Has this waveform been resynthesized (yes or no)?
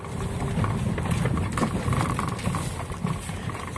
no